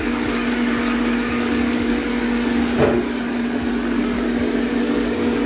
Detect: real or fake fake